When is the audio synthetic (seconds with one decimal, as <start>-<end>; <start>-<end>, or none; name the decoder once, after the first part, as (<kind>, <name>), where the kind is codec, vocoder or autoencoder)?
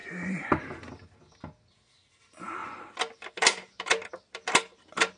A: 2.6-5.2 (vocoder, BigVGAN v2)